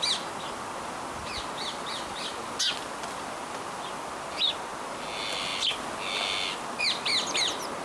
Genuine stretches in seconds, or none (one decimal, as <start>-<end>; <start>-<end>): 0.0-7.8